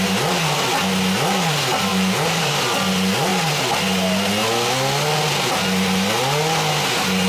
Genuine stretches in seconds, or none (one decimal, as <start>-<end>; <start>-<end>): 0.0-1.9; 2.5-7.3